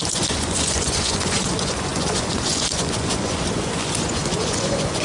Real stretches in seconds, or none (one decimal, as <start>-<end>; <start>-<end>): none

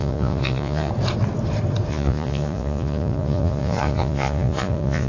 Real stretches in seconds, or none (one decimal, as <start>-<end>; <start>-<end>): 0.9-1.9

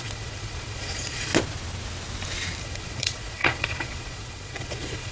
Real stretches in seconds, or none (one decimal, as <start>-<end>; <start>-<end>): 1.3-2.6